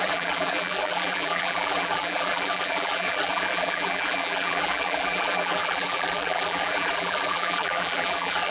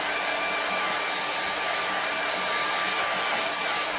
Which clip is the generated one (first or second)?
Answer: first